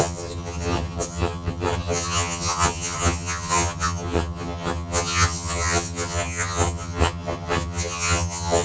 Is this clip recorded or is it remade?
remade